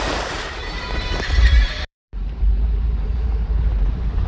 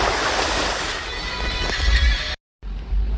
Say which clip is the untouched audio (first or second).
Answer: second